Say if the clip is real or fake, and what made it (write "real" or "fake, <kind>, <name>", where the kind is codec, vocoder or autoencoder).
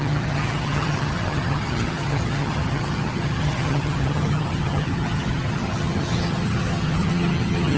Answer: fake, vocoder, HiFi-GAN